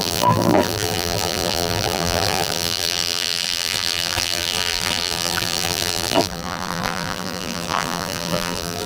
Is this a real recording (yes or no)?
no